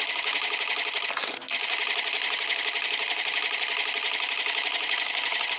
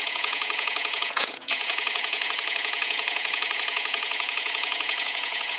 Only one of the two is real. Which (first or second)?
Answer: first